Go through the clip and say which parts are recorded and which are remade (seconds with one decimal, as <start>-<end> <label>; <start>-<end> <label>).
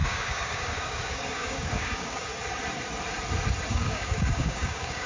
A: 0.0-2.3 remade; 2.3-3.7 recorded; 3.7-5.1 remade